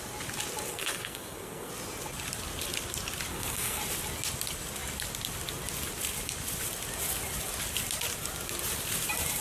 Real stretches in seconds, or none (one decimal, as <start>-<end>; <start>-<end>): 0.0-0.7; 1.7-3.3; 3.8-9.4